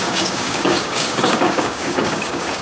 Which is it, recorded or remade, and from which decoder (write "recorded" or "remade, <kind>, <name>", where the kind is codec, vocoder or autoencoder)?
remade, codec, DAC